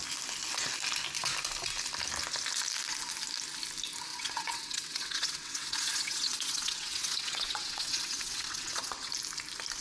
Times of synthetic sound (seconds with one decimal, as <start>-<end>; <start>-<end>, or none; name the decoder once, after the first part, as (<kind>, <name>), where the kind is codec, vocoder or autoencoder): 4.1-9.1 (vocoder, WaveNeXt)